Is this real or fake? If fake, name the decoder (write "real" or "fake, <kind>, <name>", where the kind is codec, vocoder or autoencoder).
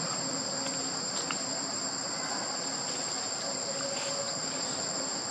real